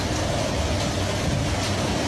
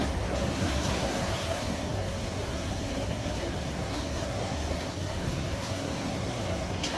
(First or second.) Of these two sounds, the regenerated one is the second